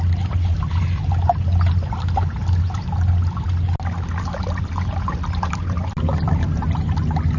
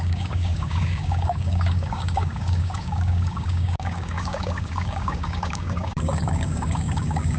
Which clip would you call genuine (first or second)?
first